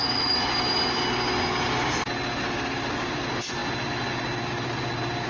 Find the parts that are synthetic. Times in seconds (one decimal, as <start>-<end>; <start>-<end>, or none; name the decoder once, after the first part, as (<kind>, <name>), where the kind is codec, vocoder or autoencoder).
none